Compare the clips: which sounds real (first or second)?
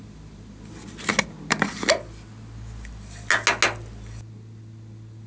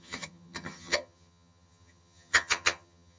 first